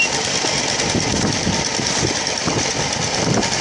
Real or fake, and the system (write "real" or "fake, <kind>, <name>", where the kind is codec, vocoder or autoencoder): real